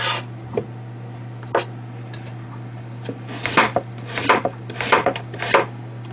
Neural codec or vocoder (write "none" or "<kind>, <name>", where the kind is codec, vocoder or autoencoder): none